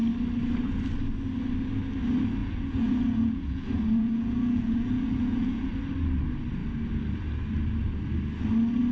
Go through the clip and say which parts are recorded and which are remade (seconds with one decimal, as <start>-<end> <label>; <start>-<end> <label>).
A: 0.0-2.4 recorded; 2.4-5.7 remade; 5.7-8.9 recorded